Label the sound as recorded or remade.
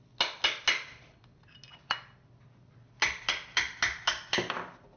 recorded